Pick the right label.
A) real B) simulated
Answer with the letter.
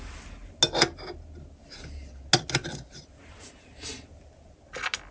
A